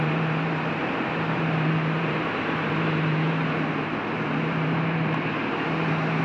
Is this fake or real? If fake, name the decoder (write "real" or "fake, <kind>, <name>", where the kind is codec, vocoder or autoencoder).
fake, vocoder, BigVGAN v2